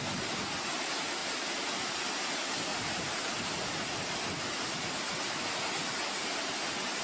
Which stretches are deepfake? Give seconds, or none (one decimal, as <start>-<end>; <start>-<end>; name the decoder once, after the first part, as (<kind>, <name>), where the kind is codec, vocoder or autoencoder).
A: 1.2-2.2 (vocoder, BigVGAN v2); 2.7-5.6